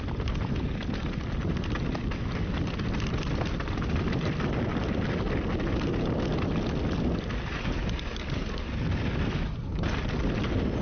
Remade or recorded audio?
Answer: recorded